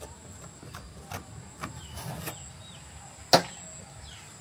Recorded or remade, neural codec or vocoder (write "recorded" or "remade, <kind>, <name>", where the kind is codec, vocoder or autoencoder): recorded